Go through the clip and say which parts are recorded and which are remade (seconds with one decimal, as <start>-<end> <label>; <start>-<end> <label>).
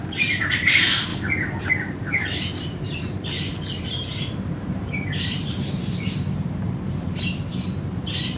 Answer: 0.0-1.1 remade; 1.1-1.7 recorded; 1.7-8.4 remade